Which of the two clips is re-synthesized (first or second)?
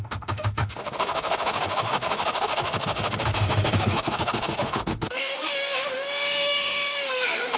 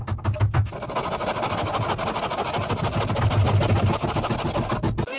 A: first